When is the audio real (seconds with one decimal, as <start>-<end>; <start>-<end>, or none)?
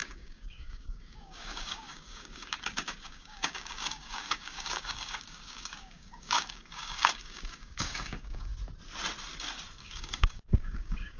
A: 8.5-9.8